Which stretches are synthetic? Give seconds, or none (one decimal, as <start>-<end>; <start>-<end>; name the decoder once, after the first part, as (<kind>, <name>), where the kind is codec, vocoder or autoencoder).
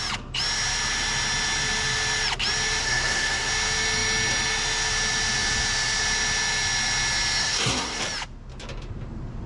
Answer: 2.8-3.5 (codec, SNAC); 7.4-8.0